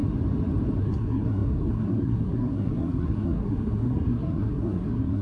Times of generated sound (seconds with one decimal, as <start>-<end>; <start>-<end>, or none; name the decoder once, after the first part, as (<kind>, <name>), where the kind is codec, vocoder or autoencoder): 0.8-5.2 (codec, SNAC)